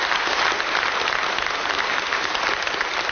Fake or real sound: real